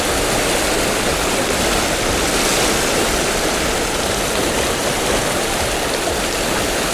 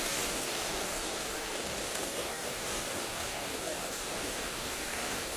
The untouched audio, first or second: first